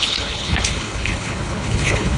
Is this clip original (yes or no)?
no